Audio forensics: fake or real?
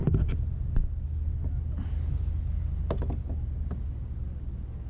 real